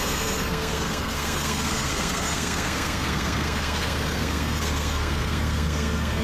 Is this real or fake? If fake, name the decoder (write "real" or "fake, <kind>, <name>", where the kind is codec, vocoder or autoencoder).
fake, codec, SNAC